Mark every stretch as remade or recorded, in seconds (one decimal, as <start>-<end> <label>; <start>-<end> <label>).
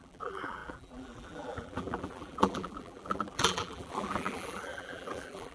0.0-5.5 remade